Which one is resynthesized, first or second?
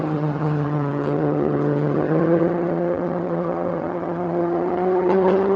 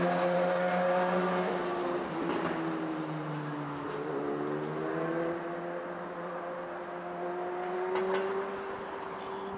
first